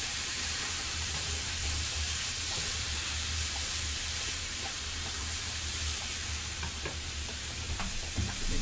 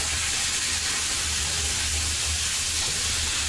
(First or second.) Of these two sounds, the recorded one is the second